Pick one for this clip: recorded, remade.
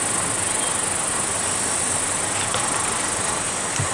recorded